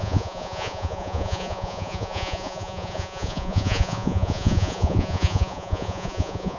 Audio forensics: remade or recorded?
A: remade